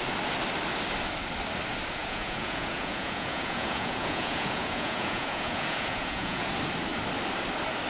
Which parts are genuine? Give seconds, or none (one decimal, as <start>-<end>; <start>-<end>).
0.0-2.0; 6.5-7.9